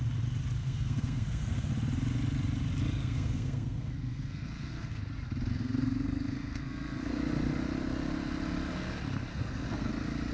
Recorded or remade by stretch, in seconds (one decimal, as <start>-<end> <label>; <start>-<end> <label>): 0.0-0.6 recorded; 0.6-1.7 remade; 1.7-3.0 recorded; 3.0-5.0 remade; 5.0-5.5 recorded; 5.5-7.2 remade; 7.2-9.3 recorded; 9.3-9.9 remade; 9.9-10.3 recorded